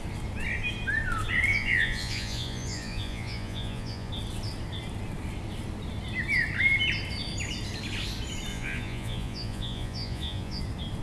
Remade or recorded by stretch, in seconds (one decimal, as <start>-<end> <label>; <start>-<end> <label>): 0.0-1.5 recorded; 1.5-4.1 remade; 4.1-8.5 recorded; 8.5-10.6 remade; 10.6-11.0 recorded